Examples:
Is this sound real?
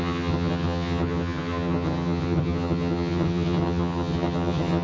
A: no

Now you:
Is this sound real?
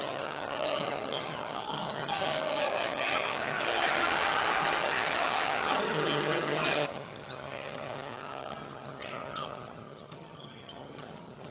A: no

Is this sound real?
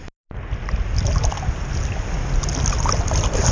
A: yes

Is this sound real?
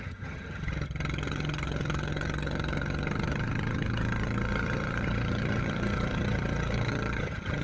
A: no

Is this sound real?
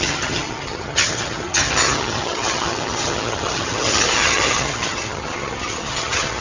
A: no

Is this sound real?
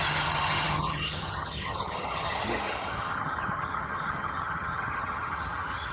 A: no